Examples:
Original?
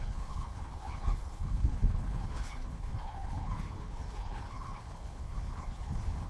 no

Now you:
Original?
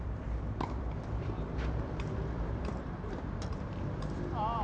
no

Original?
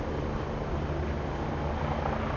yes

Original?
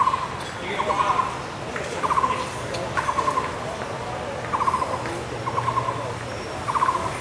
yes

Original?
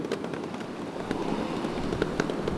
yes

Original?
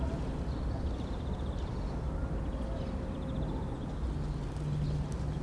yes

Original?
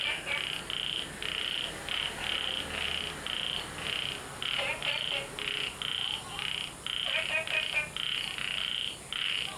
yes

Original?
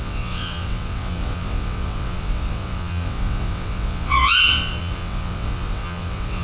no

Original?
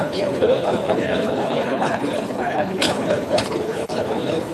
no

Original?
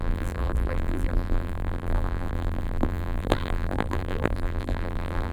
no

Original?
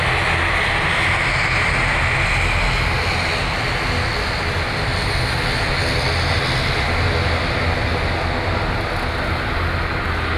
yes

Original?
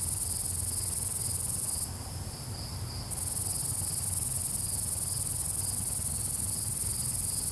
yes